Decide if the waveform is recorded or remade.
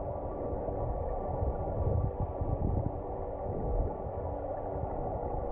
recorded